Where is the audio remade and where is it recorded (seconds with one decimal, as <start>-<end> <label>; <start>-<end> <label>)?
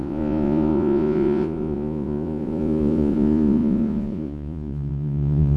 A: 0.0-5.6 remade